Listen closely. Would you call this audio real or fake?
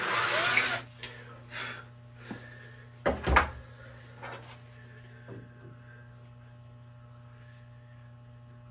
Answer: real